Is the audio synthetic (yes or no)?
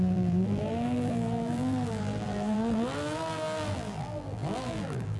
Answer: yes